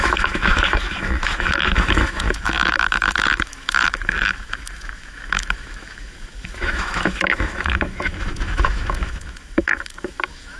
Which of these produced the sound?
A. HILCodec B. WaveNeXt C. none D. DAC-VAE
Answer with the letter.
D